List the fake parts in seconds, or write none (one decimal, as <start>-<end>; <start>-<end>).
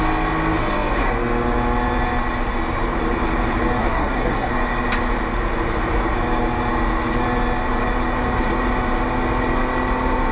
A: 3.8-4.5